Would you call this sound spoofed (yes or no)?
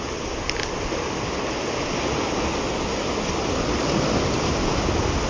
no